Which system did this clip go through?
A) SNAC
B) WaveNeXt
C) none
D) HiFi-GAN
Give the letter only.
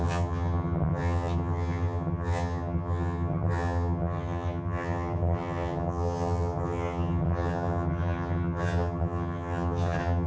D